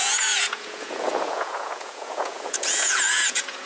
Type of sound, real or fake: fake